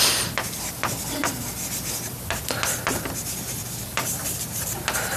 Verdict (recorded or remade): recorded